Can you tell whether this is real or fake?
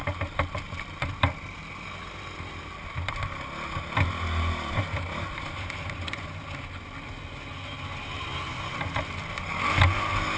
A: real